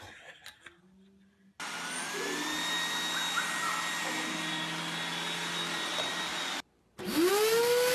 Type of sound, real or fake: real